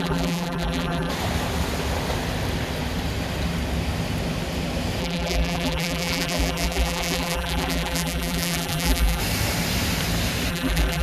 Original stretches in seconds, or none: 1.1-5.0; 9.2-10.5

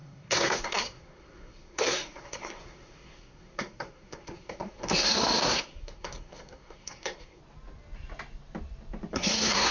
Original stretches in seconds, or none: 7.4-9.1

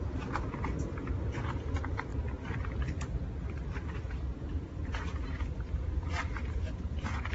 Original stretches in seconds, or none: 2.1-4.0